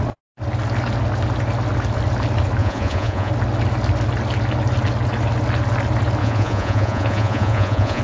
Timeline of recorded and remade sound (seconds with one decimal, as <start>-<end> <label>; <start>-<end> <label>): 0.0-2.6 recorded; 2.6-3.3 remade; 3.3-6.2 recorded; 6.2-8.0 remade